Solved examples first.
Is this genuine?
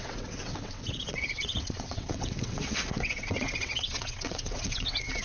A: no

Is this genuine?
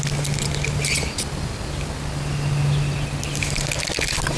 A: yes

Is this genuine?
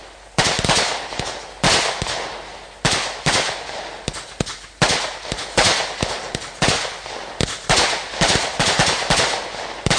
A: yes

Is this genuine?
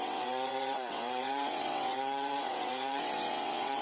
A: no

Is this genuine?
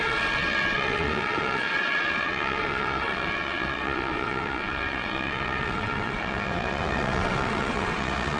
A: no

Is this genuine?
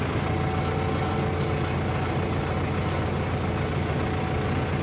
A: yes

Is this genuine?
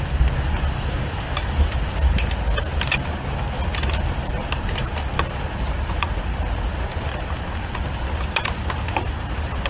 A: yes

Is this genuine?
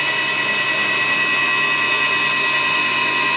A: yes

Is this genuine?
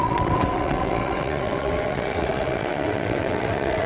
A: no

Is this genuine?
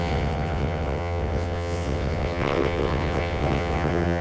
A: no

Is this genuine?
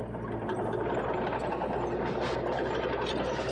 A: yes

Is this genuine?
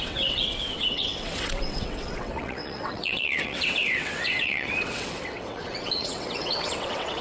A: no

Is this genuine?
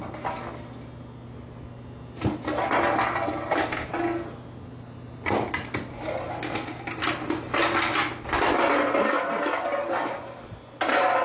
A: yes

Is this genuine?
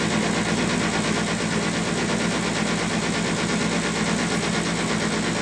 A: yes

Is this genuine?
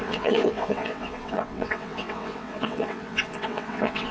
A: no